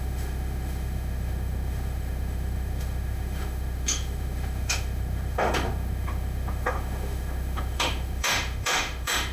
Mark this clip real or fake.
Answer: fake